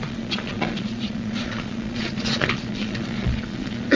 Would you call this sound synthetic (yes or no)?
yes